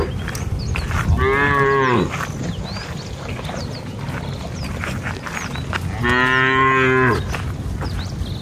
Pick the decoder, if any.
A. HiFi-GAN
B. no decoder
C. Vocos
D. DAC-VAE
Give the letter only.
B